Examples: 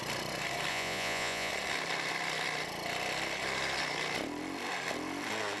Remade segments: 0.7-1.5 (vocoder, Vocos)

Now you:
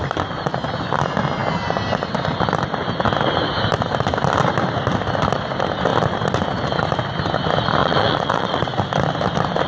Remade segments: 7.8-8.8 (vocoder, Vocos)

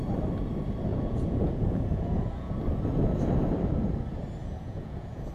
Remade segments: 0.9-2.5 (vocoder, Vocos); 4.4-5.3